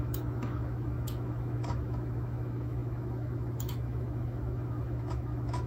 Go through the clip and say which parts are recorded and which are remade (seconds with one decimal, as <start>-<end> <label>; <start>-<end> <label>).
0.0-5.7 remade